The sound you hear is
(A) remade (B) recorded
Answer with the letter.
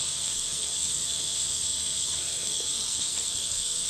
A